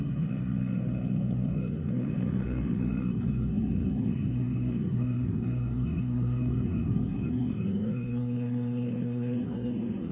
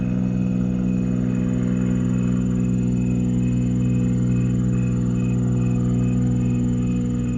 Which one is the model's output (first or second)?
first